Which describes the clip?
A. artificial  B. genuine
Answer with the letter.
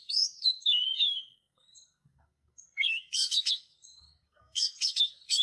A